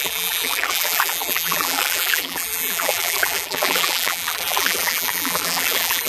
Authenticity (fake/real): fake